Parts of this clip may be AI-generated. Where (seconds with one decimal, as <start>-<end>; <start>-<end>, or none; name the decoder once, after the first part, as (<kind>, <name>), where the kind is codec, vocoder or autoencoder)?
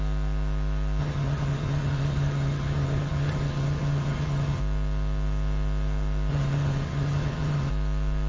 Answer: 1.0-4.6 (vocoder, HiFi-GAN); 6.3-7.7